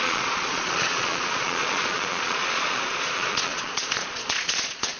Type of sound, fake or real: fake